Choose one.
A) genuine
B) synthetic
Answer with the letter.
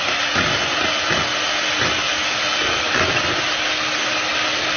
A